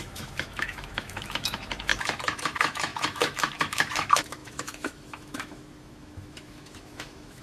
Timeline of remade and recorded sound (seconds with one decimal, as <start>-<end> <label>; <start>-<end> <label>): 0.0-7.4 remade